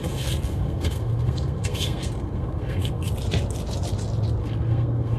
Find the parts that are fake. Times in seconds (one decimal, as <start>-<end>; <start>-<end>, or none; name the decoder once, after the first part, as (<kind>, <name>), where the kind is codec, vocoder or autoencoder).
0.0-3.1 (codec, SNAC); 4.4-5.2